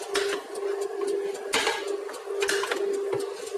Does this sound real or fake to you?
real